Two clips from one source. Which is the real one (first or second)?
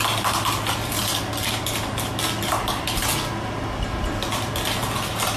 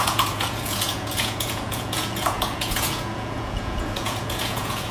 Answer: first